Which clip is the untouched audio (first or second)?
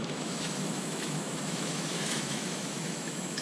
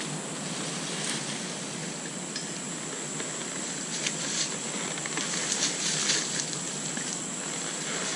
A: second